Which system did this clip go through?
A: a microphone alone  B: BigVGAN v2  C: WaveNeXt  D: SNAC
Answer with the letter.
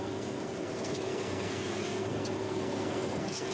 D